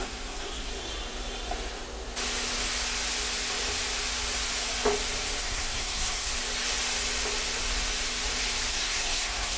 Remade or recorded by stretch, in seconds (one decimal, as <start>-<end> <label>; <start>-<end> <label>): 0.0-0.7 remade; 0.7-5.4 recorded; 5.4-6.3 remade; 6.3-8.7 recorded; 8.7-9.6 remade